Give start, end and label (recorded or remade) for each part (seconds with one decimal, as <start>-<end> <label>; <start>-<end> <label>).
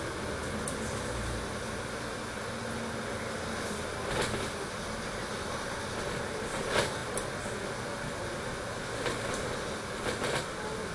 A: 0.0-10.9 recorded